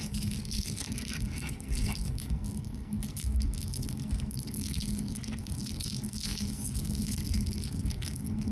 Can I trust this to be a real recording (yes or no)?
no